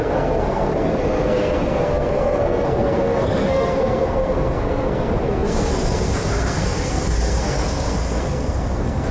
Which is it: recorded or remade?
remade